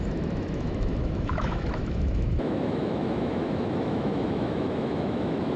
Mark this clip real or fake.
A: fake